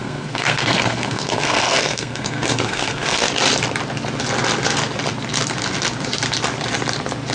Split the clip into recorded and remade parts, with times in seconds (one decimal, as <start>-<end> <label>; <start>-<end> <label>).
0.0-3.3 remade; 3.3-7.3 recorded